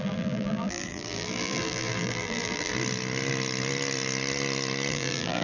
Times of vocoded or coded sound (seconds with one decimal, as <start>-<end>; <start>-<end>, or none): 0.0-2.7; 4.9-5.4